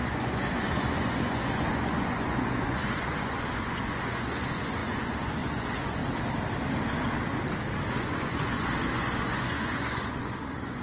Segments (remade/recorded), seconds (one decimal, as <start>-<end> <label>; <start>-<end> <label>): 0.0-6.0 remade; 6.0-8.0 recorded; 8.0-10.8 remade